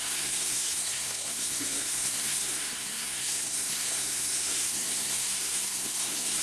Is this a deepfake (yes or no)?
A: yes